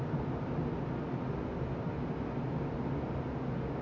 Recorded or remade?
recorded